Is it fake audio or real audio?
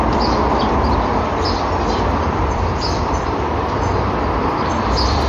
fake